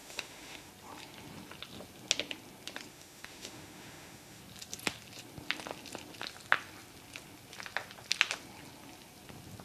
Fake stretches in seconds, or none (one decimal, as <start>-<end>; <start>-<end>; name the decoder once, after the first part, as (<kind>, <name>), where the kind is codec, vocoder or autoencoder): 0.0-0.7 (autoencoder, DAC-VAE); 2.9-4.4